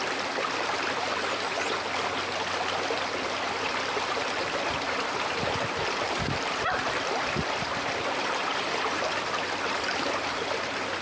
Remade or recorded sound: remade